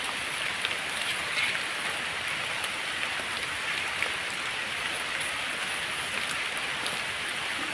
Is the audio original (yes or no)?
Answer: yes